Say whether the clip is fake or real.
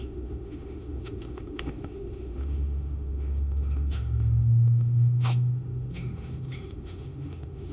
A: fake